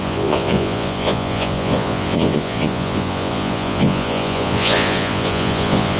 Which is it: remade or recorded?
remade